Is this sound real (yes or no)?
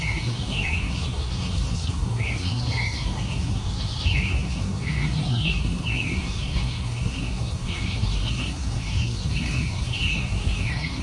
no